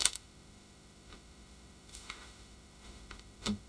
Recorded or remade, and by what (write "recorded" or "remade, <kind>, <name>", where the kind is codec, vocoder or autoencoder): remade, autoencoder, DAC-VAE